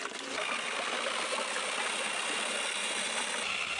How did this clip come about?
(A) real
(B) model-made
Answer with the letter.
A